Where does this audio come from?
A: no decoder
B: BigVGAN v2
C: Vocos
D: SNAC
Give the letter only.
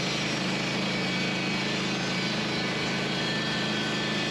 A